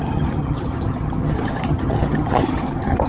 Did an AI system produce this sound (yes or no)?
yes